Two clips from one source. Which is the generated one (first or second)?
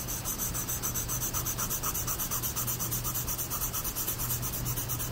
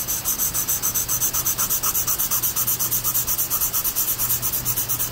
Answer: first